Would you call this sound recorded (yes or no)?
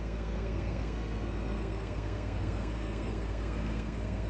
no